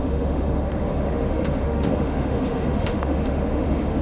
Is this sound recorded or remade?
remade